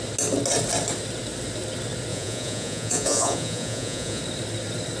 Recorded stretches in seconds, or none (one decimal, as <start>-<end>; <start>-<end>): 0.0-2.1; 4.2-5.0